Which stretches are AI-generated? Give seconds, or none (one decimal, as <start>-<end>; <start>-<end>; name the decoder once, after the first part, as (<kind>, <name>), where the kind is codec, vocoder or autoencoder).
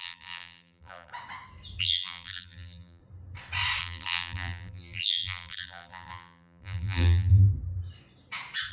0.0-1.1 (vocoder, BigVGAN v2); 1.8-3.0; 3.8-7.5